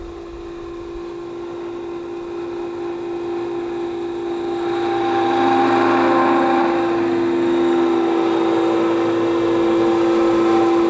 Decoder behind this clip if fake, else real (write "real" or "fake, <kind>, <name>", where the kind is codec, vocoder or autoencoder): real